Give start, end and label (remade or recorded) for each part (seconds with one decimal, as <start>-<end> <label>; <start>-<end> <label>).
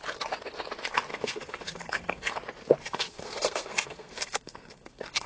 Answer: 0.0-1.1 recorded; 1.1-2.3 remade; 2.3-2.8 recorded; 2.8-5.3 remade